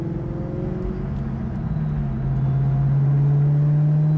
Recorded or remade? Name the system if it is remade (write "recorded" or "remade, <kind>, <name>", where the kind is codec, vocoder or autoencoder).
recorded